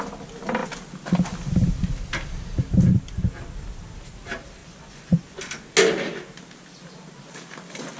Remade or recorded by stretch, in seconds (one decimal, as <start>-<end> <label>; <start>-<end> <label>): 0.0-4.6 recorded; 4.6-5.4 remade; 5.4-8.0 recorded